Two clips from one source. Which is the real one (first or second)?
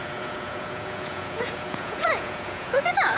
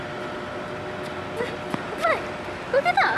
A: second